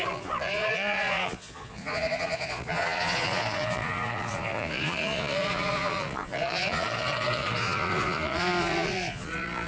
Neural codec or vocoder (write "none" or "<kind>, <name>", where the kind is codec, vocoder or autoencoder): vocoder, Vocos